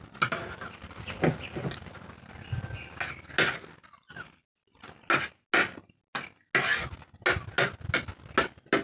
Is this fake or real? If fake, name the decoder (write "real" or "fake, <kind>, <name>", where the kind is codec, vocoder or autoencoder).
real